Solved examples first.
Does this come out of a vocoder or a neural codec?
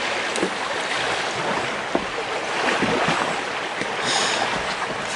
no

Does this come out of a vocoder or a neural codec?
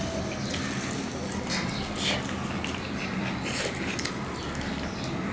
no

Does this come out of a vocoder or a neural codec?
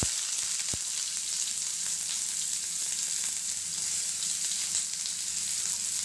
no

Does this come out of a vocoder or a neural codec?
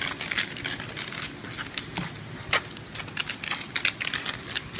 no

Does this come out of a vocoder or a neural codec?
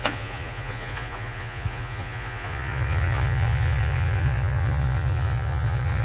yes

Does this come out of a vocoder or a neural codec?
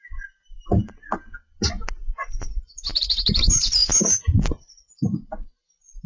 no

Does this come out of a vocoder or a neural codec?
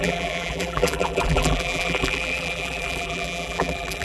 yes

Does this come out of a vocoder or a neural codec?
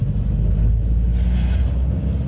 no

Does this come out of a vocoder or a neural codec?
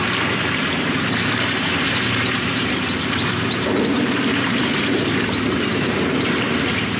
yes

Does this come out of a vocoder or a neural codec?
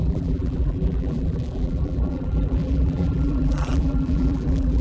yes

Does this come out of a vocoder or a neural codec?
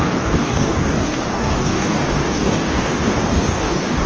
yes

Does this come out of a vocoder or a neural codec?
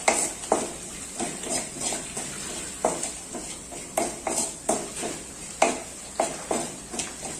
no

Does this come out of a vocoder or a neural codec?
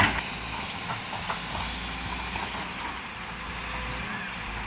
no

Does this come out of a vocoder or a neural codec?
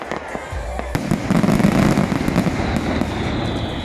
no